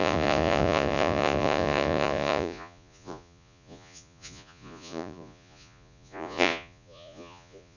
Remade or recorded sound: remade